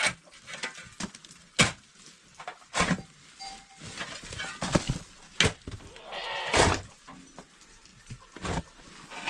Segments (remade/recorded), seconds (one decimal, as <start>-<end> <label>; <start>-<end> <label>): 0.0-9.3 recorded